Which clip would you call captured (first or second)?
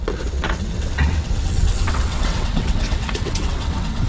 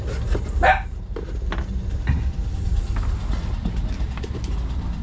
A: second